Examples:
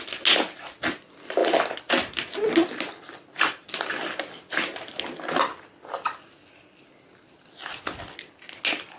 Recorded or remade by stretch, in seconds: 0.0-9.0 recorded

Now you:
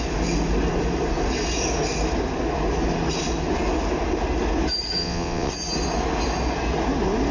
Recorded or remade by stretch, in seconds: 0.0-5.0 recorded; 5.0-5.5 remade; 5.5-7.3 recorded